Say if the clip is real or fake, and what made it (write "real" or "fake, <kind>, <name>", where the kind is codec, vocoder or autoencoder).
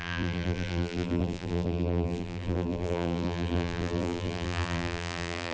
fake, vocoder, BigVGAN v2